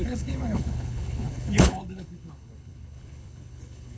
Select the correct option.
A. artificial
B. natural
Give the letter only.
A